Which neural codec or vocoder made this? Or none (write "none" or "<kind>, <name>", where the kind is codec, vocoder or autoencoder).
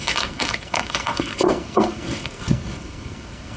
codec, SNAC